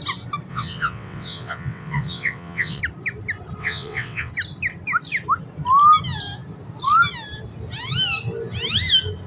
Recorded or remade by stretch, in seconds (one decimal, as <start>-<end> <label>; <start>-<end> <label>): 0.0-0.5 recorded; 0.5-2.8 remade; 2.8-3.6 recorded; 3.6-4.3 remade; 4.3-9.3 recorded